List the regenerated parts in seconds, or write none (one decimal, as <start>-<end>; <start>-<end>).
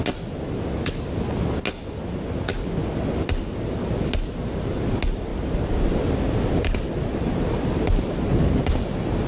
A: 5.3-9.3